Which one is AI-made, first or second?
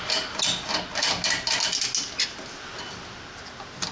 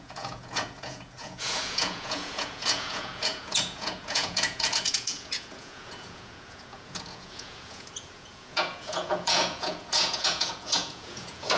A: second